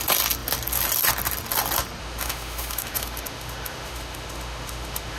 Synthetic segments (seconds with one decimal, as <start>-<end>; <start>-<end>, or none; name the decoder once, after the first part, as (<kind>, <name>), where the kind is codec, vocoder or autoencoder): 2.0-5.2 (autoencoder, DAC-VAE)